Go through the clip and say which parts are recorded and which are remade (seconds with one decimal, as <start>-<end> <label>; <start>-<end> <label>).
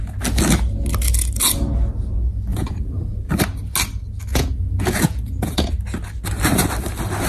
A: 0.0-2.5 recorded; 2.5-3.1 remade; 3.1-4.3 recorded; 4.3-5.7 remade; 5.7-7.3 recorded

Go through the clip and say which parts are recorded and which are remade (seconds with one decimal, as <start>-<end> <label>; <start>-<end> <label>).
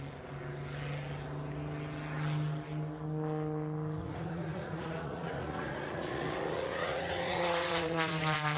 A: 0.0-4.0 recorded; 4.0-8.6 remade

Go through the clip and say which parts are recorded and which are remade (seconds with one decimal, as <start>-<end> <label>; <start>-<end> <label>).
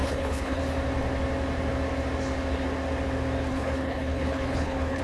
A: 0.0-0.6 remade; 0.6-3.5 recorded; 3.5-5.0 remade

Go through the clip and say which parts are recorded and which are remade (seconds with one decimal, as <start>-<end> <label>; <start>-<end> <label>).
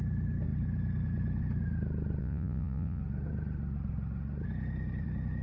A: 0.0-2.2 recorded; 2.2-3.0 remade; 3.0-5.4 recorded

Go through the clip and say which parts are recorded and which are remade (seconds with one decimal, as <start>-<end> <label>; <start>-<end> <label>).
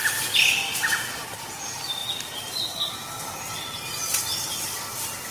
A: 0.0-5.3 recorded